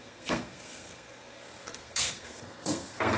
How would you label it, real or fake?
fake